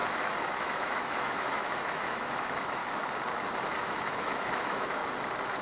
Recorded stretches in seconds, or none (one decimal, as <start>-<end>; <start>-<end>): 0.0-0.6; 2.8-3.8; 5.0-5.6